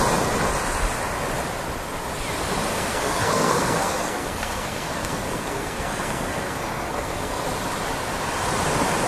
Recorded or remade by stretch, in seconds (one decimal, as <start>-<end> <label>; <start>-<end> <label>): 0.0-2.7 recorded; 2.7-7.4 remade; 7.4-9.1 recorded